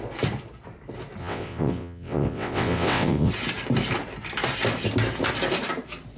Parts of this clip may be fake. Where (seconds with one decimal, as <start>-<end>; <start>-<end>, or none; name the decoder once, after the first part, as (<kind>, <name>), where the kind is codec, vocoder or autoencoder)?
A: 1.2-3.3 (vocoder, WaveNeXt)